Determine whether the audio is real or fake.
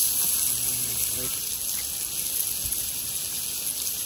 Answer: real